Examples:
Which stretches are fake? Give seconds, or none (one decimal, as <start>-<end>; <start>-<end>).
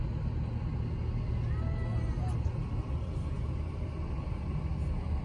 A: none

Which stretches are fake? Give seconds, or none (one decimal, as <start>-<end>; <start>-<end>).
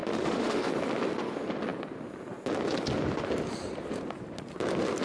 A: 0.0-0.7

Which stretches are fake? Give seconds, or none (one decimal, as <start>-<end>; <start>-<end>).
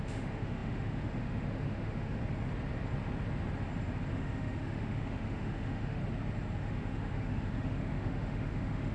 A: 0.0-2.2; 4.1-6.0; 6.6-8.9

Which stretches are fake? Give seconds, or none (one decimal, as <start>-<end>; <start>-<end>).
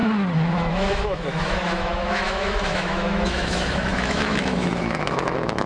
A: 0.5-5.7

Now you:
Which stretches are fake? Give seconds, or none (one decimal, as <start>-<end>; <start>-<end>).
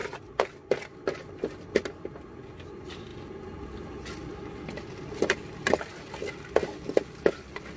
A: none